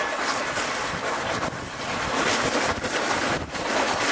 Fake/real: real